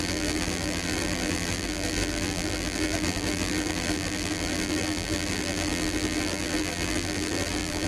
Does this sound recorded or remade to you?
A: remade